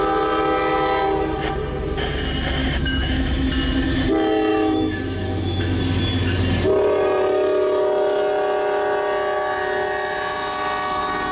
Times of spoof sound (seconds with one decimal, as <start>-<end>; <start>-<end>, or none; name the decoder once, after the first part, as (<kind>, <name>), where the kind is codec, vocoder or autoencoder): 2.6-3.2 (autoencoder, DAC-VAE); 4.5-5.8